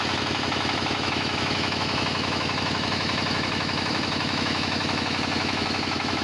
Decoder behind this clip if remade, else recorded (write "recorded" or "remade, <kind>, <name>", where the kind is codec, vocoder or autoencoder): remade, autoencoder, DAC-VAE